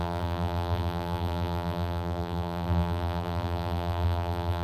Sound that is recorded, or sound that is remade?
remade